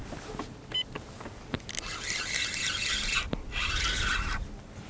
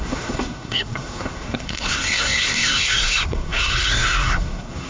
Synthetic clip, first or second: second